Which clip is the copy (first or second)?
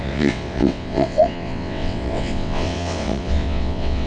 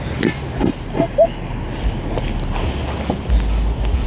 first